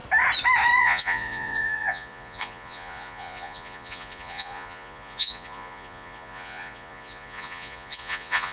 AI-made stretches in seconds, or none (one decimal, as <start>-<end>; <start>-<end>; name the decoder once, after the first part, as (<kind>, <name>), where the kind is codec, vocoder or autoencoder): 0.8-8.5 (vocoder, Vocos)